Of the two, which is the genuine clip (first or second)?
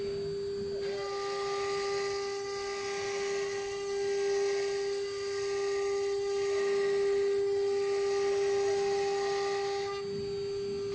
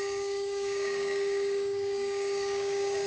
first